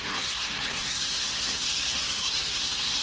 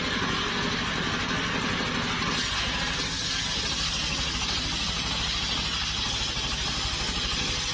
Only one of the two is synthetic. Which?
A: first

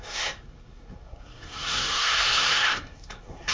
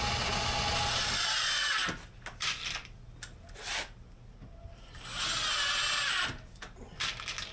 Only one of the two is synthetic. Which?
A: first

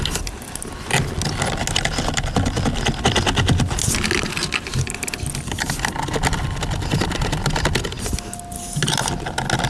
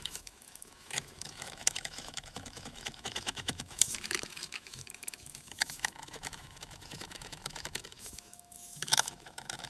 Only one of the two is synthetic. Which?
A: second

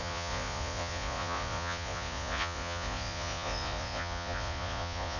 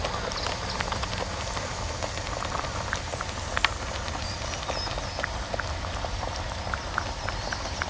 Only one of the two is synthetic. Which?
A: first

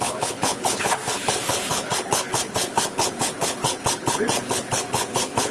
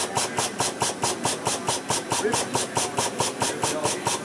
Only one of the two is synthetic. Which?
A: first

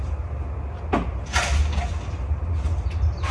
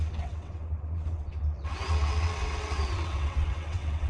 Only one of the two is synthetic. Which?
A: second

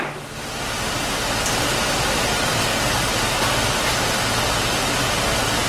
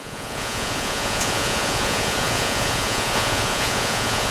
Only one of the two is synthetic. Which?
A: second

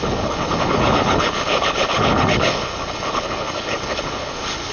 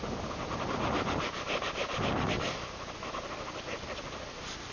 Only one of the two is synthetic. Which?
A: first